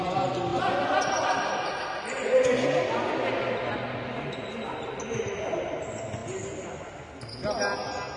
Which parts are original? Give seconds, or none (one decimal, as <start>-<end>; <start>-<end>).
0.0-8.2